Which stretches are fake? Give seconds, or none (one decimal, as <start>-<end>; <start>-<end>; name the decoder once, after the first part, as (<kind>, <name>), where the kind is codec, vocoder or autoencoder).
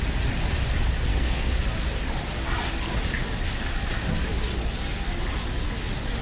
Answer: 1.1-1.6 (codec, SNAC)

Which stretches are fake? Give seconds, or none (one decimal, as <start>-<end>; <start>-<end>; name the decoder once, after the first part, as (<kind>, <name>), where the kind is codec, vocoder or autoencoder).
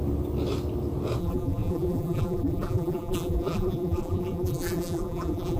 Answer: 1.2-5.6 (vocoder, BigVGAN v2)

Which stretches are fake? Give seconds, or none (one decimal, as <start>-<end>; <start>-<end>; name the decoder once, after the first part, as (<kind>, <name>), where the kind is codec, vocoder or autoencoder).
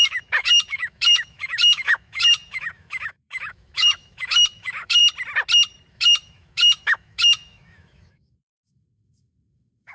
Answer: 0.0-5.0 (autoencoder, DAC-VAE); 5.9-9.9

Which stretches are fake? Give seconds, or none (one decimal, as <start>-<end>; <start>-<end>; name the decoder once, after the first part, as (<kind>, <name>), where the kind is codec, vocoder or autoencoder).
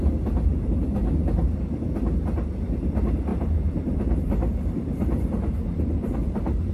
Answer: 3.3-6.7 (vocoder, BigVGAN v2)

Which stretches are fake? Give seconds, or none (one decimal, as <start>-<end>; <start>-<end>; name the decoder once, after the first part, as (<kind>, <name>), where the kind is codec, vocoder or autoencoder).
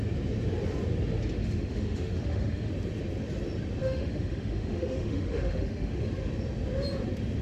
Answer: 1.4-2.7 (autoencoder, DAC-VAE); 3.8-6.0